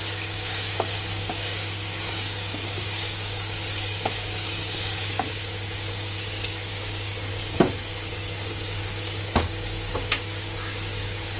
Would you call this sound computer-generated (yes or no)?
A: yes